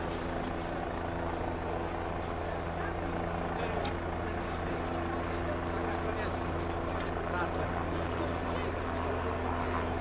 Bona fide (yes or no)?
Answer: yes